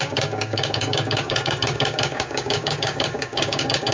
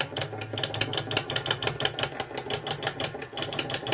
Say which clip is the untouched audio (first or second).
second